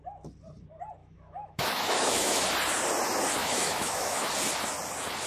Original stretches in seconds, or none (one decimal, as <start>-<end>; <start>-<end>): 0.0-1.0; 2.4-3.4; 4.3-5.3